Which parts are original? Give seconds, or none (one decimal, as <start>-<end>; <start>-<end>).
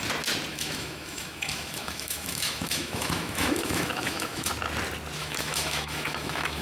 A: 0.0-0.5; 4.5-5.2